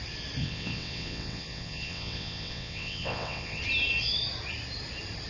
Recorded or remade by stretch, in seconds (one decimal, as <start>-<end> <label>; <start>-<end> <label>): 0.0-0.4 recorded; 0.4-3.6 remade; 3.6-5.3 recorded